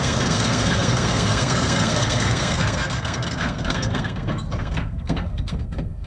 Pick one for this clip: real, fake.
fake